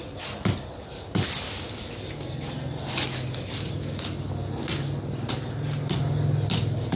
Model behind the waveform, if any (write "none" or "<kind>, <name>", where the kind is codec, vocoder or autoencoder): none